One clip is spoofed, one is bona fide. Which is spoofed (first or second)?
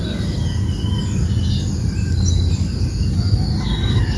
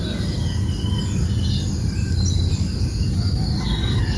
second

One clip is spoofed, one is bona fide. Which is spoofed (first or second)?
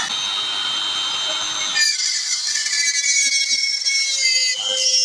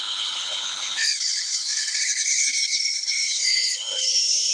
second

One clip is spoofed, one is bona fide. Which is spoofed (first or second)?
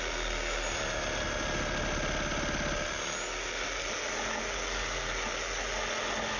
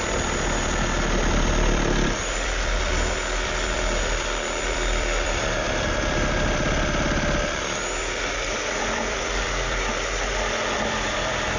second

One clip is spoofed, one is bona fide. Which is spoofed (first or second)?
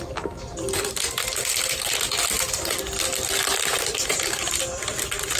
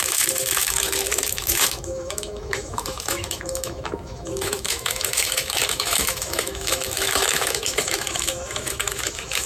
second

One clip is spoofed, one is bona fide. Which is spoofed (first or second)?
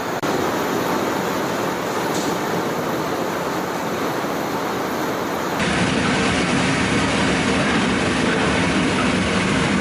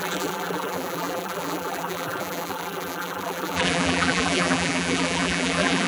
second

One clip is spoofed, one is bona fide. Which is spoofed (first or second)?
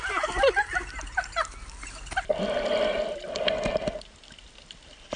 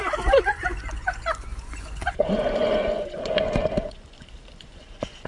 second